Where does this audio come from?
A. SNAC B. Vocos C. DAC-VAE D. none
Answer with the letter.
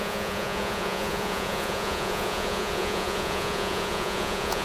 B